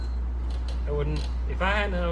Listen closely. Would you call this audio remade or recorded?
recorded